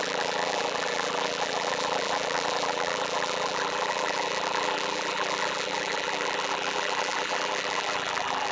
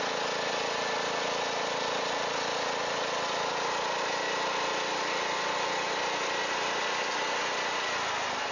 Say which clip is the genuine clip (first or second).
second